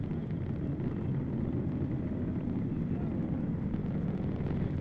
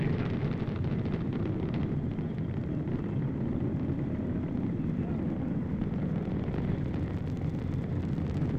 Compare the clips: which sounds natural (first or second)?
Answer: first